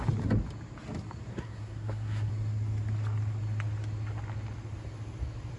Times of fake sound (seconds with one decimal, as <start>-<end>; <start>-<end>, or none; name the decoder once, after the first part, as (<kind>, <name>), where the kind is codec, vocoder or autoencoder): 1.3-2.3 (codec, SNAC)